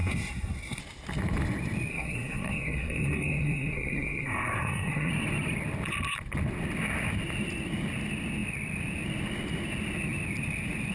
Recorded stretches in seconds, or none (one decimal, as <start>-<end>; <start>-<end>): 0.8-1.9; 5.1-10.9